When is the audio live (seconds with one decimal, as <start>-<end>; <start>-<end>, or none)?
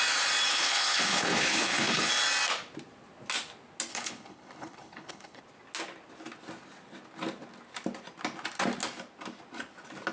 0.0-0.5; 2.1-3.9; 5.4-10.1